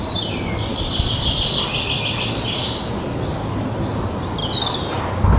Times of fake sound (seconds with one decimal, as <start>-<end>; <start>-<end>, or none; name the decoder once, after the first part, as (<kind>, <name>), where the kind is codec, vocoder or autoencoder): none